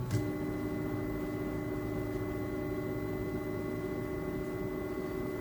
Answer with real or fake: real